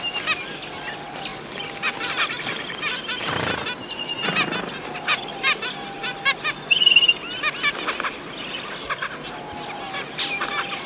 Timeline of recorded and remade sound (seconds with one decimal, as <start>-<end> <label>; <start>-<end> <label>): 0.0-10.9 recorded